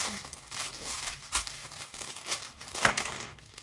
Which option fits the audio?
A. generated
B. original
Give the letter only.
A